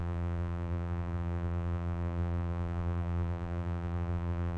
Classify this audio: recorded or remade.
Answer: remade